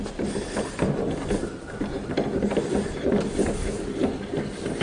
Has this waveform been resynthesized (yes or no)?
no